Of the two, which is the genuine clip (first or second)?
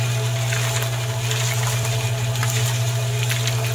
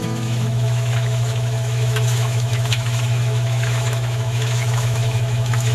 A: first